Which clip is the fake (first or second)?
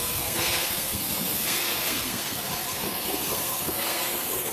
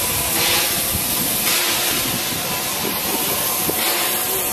first